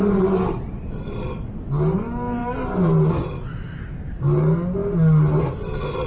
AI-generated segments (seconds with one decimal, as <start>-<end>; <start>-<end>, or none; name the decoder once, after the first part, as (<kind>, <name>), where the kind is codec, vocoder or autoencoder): none